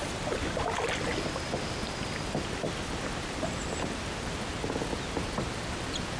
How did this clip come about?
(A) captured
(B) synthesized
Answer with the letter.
A